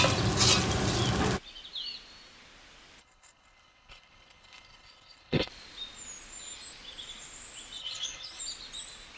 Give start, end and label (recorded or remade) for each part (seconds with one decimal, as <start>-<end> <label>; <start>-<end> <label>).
0.0-3.0 recorded; 3.0-5.5 remade; 5.5-7.8 recorded; 7.8-8.4 remade; 8.4-9.2 recorded